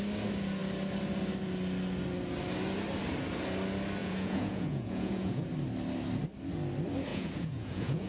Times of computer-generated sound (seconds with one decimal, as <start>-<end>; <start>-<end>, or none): 4.0-5.4; 7.1-8.1